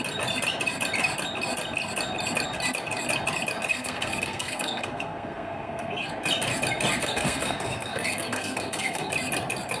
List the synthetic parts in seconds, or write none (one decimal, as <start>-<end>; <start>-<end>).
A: 3.7-6.1; 7.0-9.1